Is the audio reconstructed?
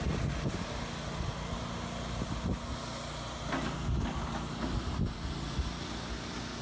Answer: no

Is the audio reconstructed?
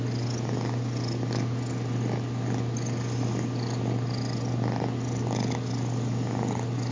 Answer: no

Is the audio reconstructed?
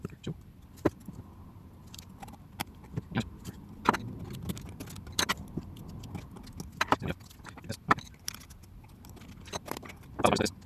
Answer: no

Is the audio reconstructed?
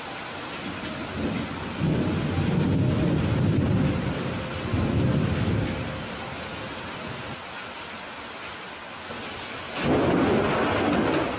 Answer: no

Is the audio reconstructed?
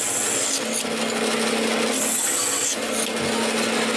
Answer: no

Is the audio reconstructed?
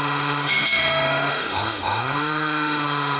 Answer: yes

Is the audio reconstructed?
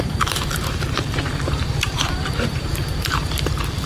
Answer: yes